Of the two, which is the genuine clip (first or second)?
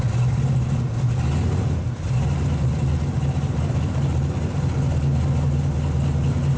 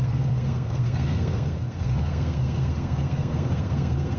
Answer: first